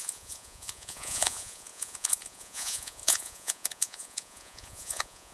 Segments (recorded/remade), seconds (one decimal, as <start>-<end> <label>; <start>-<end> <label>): 0.0-5.3 remade